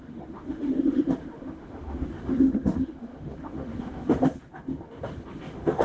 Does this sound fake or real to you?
fake